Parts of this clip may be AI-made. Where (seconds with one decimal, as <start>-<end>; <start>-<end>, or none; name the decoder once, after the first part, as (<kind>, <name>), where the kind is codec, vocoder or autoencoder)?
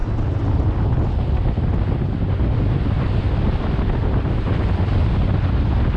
none